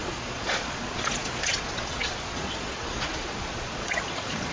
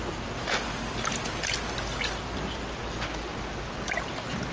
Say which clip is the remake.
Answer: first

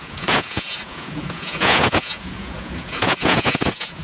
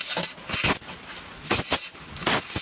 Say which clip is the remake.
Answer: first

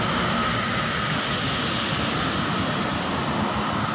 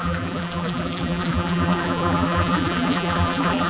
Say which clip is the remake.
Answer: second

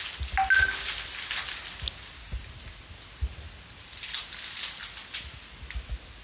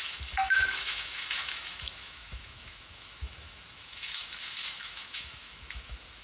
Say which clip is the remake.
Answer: second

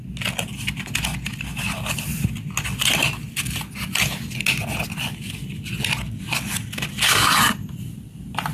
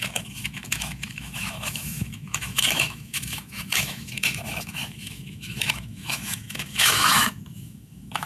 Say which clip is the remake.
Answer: second